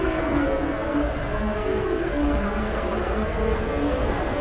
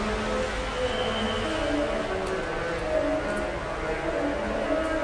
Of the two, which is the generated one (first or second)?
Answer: first